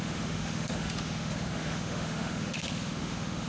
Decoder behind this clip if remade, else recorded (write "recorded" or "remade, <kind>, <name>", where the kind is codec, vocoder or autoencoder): remade, autoencoder, DAC-VAE